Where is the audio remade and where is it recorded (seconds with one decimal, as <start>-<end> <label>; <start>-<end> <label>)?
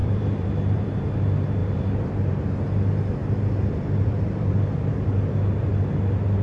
0.0-1.0 remade; 1.0-1.6 recorded; 1.6-2.3 remade; 2.3-3.2 recorded; 3.2-4.9 remade; 4.9-6.4 recorded